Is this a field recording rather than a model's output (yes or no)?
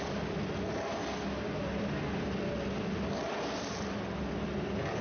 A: yes